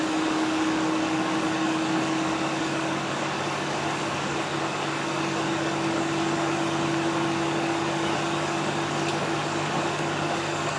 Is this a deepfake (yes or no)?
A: yes